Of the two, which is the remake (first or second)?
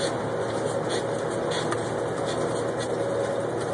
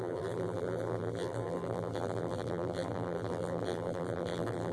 second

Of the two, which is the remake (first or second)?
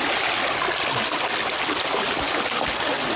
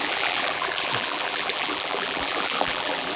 second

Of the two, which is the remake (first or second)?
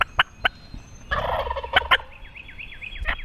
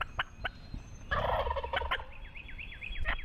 second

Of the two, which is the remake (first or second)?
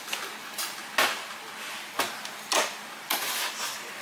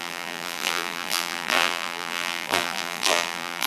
second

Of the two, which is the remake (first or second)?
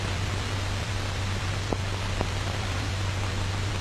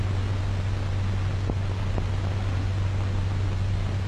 first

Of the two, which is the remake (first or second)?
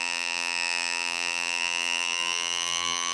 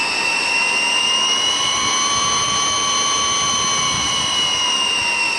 first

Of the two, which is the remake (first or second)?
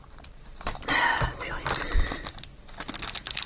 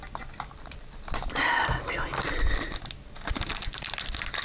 second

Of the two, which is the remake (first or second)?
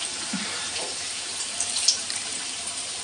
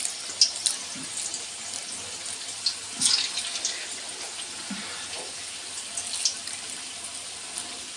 first